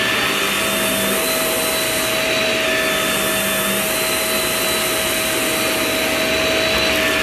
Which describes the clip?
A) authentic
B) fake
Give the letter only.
A